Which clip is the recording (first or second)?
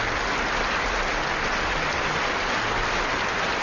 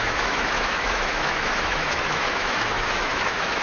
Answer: first